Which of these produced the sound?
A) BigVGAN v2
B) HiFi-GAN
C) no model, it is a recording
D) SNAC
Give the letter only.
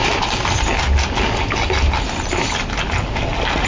C